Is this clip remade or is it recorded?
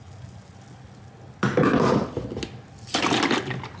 recorded